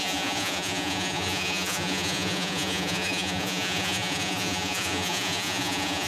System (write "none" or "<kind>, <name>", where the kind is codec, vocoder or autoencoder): vocoder, Vocos